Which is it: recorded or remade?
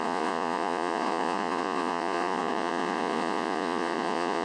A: remade